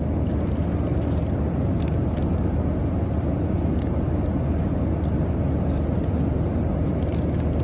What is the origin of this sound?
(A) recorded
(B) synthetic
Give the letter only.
A